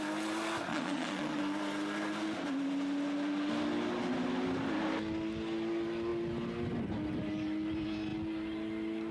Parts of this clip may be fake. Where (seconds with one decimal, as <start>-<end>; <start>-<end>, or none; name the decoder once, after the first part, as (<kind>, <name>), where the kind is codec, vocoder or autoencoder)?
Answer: 0.7-1.4 (vocoder, Vocos)